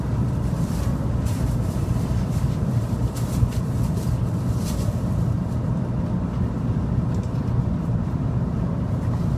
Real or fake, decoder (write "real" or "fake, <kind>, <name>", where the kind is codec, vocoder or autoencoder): fake, vocoder, BigVGAN v2